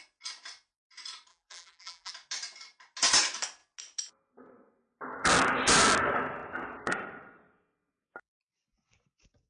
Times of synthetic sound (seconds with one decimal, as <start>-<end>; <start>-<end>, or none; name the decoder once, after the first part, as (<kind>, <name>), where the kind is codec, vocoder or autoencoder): 1.3-2.1 (vocoder, BigVGAN v2)